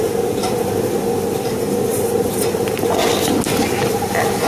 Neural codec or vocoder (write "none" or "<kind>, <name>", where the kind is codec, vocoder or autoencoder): none